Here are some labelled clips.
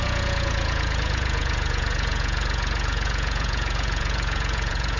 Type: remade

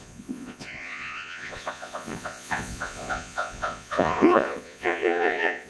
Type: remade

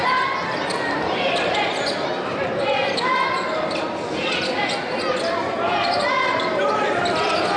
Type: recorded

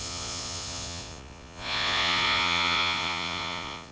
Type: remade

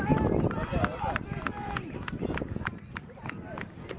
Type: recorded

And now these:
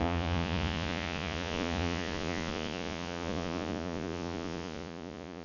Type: remade